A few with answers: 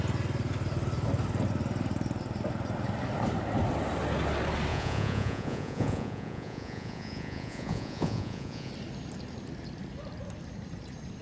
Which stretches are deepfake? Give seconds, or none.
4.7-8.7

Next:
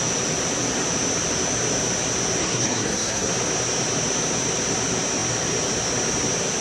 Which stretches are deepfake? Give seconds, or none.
2.4-3.3

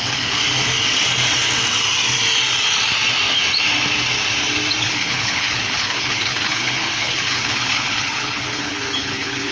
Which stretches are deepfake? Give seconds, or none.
0.0-0.4; 4.8-9.5

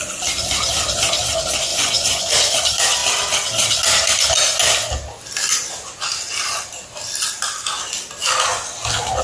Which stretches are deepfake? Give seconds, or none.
1.7-2.3